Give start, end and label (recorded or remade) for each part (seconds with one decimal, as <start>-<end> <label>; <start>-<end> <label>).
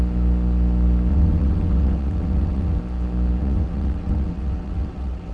0.0-1.1 recorded; 1.1-2.8 remade; 2.8-3.4 recorded; 3.4-5.3 remade